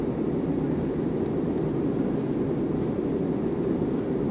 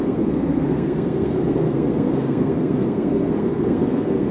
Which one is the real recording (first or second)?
first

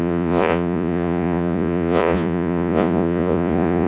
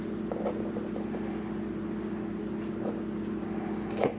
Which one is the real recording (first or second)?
second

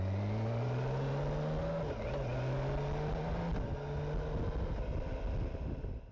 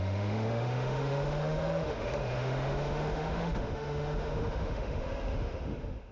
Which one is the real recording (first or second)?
first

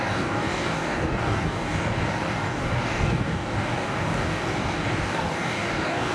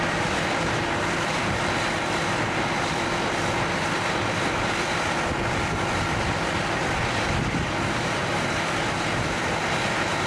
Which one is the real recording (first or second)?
second